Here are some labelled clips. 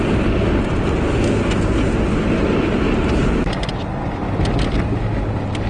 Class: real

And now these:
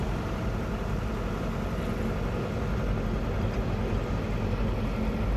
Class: real